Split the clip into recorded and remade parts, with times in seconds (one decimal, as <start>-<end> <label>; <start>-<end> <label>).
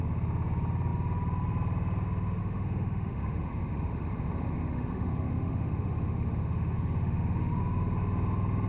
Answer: 0.0-2.4 recorded; 2.4-7.6 remade; 7.6-8.7 recorded